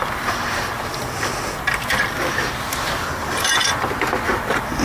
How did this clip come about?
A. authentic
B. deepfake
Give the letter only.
A